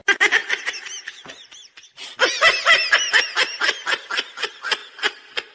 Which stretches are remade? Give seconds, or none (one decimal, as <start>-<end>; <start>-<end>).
none